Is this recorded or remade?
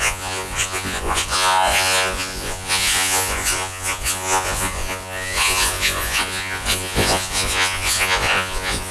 remade